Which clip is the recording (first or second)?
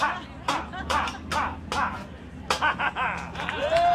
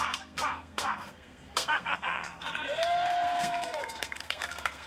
first